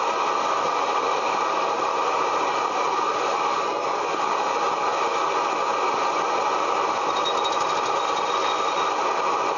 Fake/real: real